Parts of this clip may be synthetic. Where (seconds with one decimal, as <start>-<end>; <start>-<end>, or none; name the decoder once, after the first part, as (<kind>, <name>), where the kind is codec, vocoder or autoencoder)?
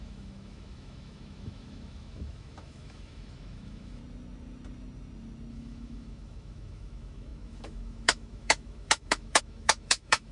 0.0-4.0 (autoencoder, DAC-VAE); 5.5-10.3